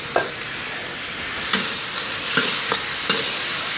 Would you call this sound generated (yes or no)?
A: no